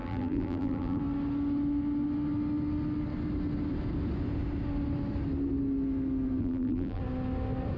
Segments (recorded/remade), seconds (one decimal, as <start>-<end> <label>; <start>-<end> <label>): 0.0-1.0 remade; 1.0-6.4 recorded; 6.4-7.0 remade; 7.0-7.8 recorded